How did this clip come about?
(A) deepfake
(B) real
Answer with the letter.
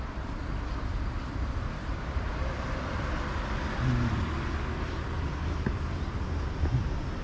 A